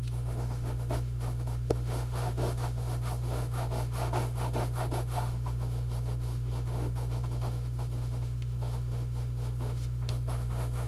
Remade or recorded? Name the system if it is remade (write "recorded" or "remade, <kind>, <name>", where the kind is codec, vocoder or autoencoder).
remade, autoencoder, DAC-VAE